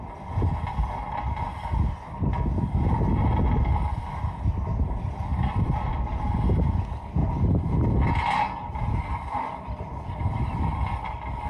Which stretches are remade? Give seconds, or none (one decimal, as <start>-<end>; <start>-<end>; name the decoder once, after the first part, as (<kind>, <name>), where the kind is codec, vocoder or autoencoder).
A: 5.3-5.9 (vocoder, BigVGAN v2); 7.2-9.0